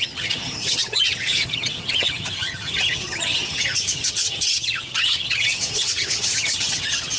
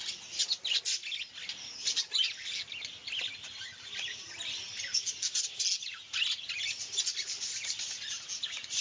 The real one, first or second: second